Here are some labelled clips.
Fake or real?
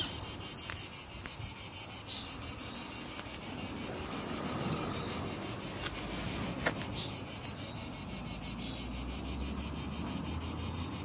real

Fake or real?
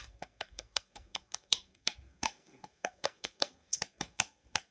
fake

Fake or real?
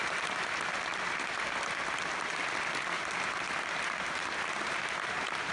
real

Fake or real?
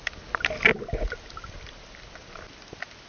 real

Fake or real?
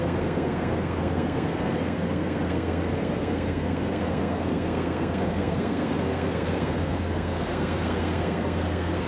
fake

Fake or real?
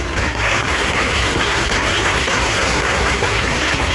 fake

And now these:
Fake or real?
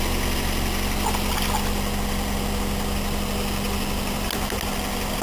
real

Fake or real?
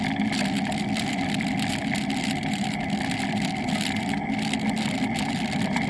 real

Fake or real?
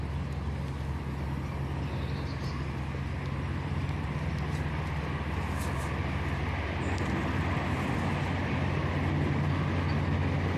real